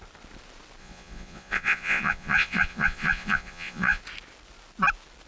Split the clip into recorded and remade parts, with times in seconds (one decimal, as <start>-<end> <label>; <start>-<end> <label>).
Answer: 0.0-0.8 recorded; 0.8-4.0 remade; 4.0-5.3 recorded